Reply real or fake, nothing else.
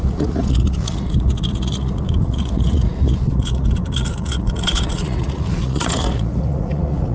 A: fake